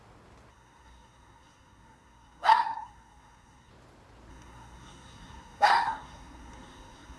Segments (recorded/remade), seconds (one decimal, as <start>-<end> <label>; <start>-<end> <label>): 0.0-0.5 recorded; 0.5-3.7 remade; 3.7-4.3 recorded; 4.3-7.2 remade